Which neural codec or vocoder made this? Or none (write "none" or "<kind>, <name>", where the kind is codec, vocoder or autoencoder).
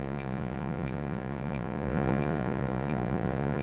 vocoder, Vocos